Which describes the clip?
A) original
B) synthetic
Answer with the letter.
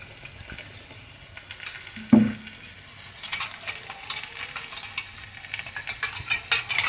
A